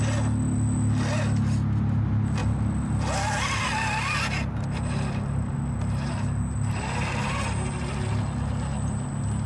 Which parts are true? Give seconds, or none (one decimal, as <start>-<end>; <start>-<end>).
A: 0.0-9.5